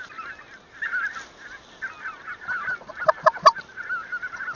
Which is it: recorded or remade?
recorded